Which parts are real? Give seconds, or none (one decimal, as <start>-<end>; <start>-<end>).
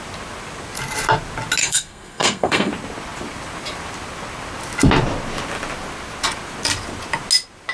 0.0-1.6; 2.7-7.7